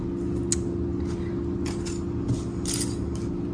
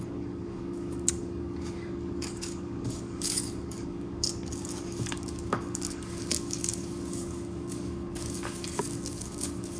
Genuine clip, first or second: first